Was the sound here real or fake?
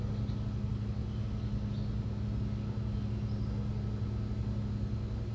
real